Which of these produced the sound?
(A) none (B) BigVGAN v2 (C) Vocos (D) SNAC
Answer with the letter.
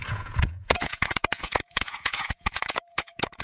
C